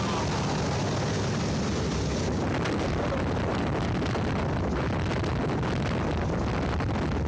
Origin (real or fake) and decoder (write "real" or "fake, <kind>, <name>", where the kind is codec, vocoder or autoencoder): real